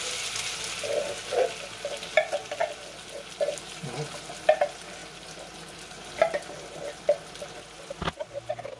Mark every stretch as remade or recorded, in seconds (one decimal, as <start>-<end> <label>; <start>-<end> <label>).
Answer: 0.0-8.8 recorded